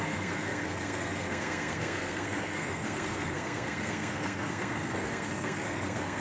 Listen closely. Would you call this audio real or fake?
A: fake